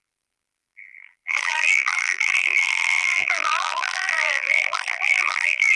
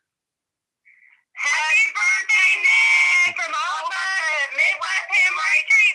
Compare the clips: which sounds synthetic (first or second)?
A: first